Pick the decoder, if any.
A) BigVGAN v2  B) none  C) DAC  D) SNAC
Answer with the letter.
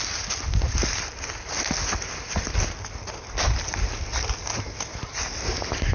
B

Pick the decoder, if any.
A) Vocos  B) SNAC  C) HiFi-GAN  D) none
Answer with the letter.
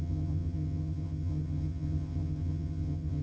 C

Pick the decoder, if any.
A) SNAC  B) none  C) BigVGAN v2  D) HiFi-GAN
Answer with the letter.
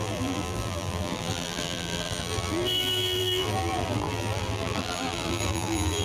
C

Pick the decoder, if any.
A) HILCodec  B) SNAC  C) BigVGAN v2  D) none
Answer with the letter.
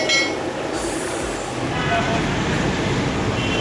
D